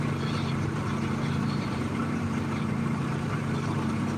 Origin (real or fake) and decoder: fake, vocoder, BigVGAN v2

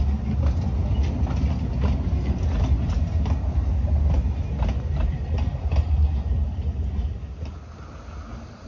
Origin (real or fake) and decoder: real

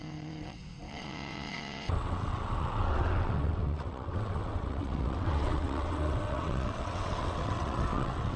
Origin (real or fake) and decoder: fake, vocoder, WaveNeXt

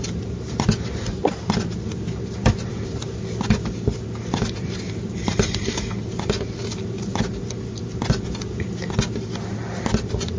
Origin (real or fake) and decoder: real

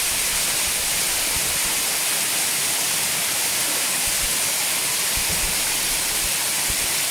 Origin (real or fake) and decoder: real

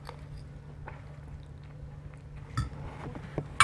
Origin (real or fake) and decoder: real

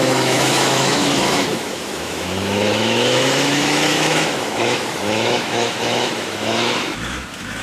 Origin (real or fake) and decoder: fake, autoencoder, DAC-VAE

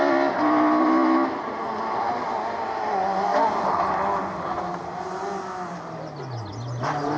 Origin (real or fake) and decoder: real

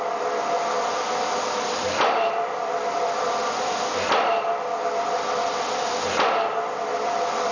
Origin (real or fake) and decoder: fake, vocoder, BigVGAN v2